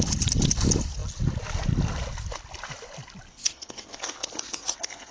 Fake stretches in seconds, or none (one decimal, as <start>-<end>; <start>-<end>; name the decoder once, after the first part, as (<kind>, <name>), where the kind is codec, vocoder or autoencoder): 3.3-5.1 (codec, SNAC)

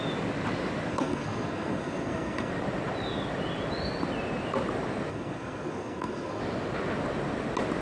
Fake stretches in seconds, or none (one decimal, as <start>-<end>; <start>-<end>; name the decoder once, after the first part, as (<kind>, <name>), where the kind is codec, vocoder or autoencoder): 0.9-2.5 (codec, SNAC); 5.1-6.4

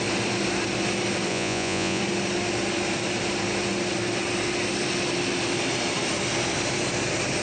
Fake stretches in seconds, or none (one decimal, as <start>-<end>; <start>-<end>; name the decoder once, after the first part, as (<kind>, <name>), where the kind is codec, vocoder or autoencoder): 1.3-2.0 (vocoder, Vocos)

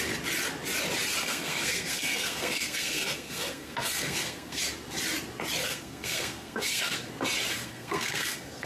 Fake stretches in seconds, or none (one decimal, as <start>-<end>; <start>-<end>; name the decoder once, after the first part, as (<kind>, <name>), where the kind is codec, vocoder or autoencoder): 1.2-4.6 (codec, SNAC); 5.6-7.1; 7.5-8.7

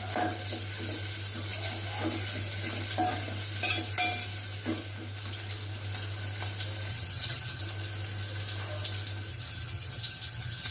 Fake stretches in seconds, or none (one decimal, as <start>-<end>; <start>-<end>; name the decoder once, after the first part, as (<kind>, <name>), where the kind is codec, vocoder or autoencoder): 6.9-7.6 (vocoder, HiFi-GAN); 9.3-10.7